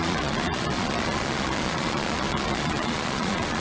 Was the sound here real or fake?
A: fake